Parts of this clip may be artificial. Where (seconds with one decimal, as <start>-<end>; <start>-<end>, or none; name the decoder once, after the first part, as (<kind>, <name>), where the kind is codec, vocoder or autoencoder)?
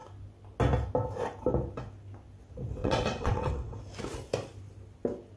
2.8-3.8 (vocoder, WaveNeXt)